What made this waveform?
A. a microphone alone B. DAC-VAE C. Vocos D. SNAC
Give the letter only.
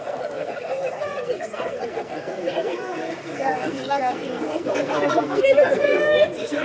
D